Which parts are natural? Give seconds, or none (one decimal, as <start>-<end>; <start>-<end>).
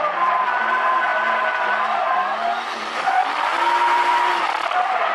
0.0-5.1